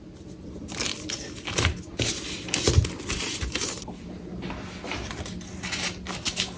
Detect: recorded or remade recorded